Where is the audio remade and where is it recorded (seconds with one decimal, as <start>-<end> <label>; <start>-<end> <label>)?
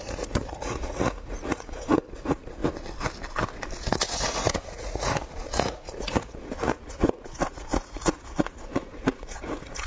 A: 0.0-2.6 remade; 2.6-3.8 recorded; 3.8-9.9 remade